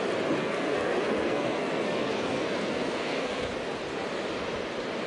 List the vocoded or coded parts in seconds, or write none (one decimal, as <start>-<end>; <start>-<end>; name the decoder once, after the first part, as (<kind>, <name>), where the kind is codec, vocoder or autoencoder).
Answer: 0.4-3.5 (codec, SNAC)